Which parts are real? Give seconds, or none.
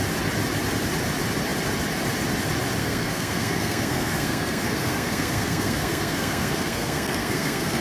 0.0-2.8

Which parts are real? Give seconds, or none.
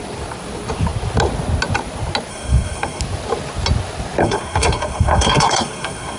0.0-2.3; 3.0-4.2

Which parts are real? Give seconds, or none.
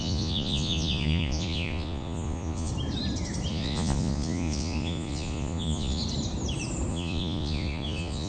2.7-3.5; 6.0-6.9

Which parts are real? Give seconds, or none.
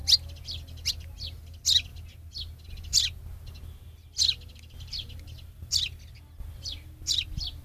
0.0-7.6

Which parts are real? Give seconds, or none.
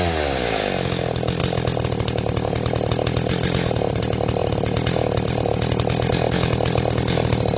0.0-7.6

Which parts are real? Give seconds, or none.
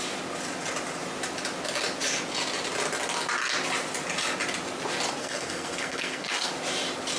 0.0-5.2; 6.5-7.2